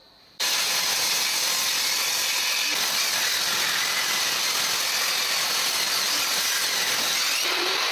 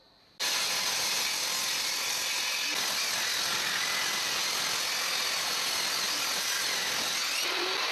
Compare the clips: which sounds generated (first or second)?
first